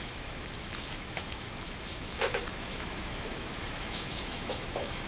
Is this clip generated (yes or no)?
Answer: yes